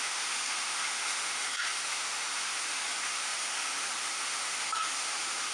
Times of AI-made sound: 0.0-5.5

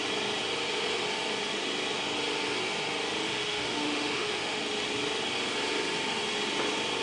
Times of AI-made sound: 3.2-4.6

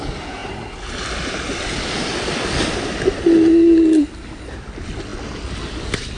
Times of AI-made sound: none

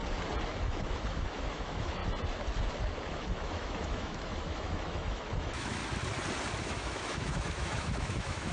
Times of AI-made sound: 0.6-2.0; 3.1-5.8; 6.6-8.5

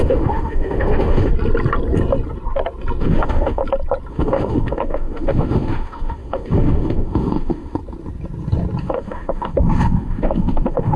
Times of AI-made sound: 0.0-1.3; 3.0-3.6; 4.1-7.8; 8.8-11.0